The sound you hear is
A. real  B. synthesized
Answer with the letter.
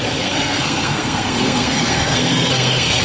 B